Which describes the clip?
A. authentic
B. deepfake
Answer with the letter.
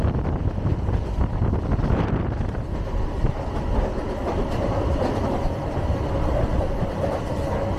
A